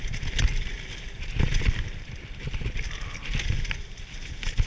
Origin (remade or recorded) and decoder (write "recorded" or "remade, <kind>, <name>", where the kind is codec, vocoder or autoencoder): recorded